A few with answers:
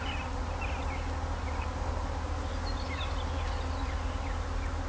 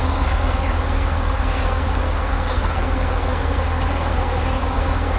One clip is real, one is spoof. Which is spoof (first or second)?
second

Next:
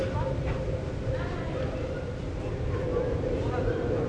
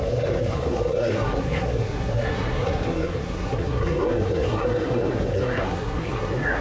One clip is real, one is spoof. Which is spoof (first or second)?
second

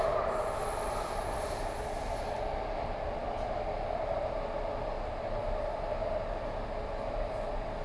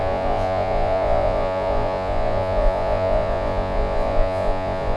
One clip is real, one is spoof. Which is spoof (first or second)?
second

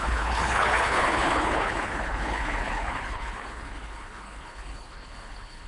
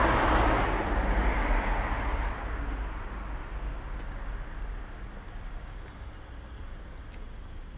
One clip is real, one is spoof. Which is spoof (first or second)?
first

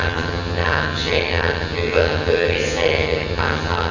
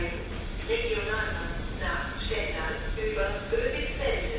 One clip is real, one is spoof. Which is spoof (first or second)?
first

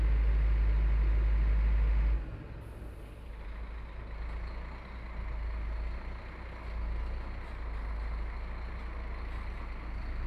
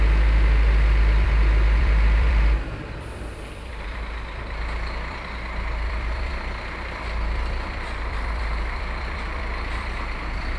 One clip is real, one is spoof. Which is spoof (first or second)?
second